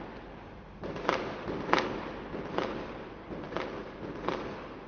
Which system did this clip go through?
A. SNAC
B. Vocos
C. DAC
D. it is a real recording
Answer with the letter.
D